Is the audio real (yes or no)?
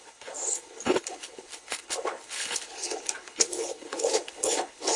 no